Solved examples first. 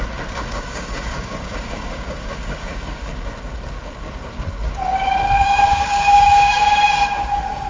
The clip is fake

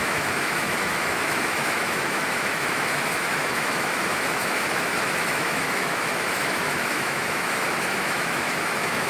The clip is fake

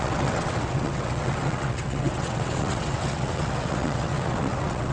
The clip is fake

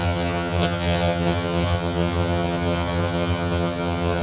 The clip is fake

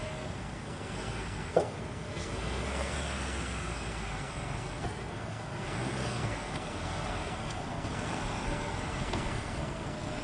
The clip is fake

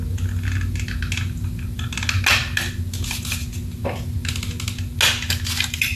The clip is real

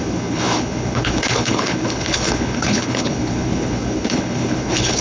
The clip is fake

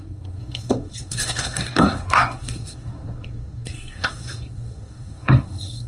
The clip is fake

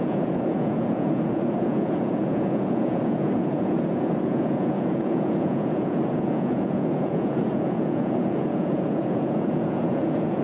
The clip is fake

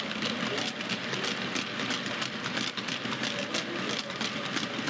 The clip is real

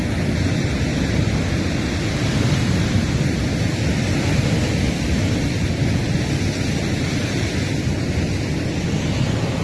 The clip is real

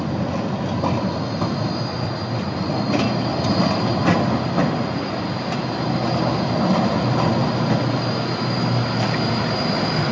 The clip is real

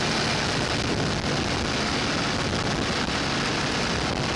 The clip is real